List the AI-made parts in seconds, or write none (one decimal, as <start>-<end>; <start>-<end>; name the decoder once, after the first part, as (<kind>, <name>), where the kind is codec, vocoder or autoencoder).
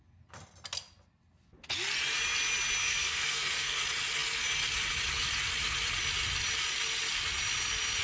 2.8-3.8 (codec, SNAC)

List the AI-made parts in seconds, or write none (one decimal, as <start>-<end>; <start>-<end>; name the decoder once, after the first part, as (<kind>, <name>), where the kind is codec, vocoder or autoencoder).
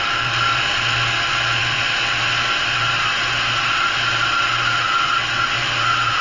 none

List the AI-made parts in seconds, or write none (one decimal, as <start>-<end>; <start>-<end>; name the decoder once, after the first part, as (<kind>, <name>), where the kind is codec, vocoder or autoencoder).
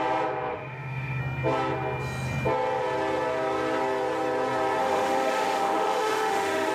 0.5-1.2 (autoencoder, DAC-VAE); 4.8-6.7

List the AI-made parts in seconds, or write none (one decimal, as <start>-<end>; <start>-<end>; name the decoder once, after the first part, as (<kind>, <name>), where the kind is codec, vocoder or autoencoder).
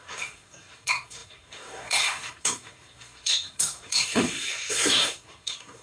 0.0-5.8 (codec, SNAC)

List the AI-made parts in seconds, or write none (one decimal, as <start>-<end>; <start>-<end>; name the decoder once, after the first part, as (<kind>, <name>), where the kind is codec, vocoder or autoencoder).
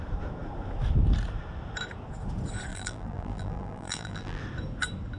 2.7-4.4 (vocoder, BigVGAN v2)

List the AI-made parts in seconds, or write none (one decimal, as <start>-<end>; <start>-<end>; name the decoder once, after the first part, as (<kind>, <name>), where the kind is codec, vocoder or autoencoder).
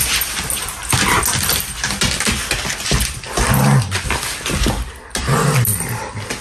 none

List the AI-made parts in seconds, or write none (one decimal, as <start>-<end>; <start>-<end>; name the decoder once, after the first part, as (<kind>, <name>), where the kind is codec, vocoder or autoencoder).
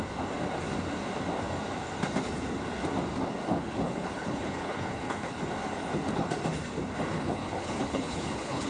3.5-5.4 (codec, HILCodec); 7.1-8.7